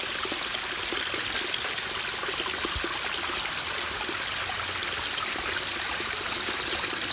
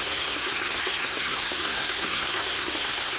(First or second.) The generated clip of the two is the second